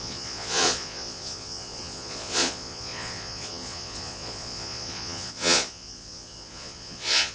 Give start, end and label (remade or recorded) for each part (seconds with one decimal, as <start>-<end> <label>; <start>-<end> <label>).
0.0-7.3 remade